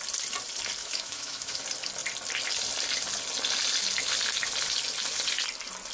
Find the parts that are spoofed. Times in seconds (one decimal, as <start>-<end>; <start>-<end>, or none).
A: 0.8-1.6